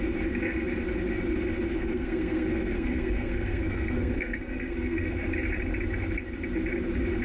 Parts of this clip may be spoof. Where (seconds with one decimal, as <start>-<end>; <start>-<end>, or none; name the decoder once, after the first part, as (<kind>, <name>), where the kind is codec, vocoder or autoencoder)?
1.7-5.1 (codec, SNAC)